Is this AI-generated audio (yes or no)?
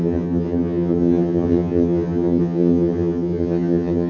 yes